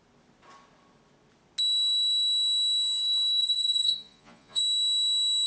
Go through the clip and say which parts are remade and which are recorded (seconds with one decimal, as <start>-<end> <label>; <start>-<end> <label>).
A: 0.0-3.4 recorded; 3.4-4.6 remade; 4.6-5.5 recorded